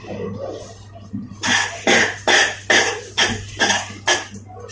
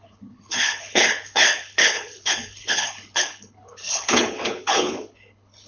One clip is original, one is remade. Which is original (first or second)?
first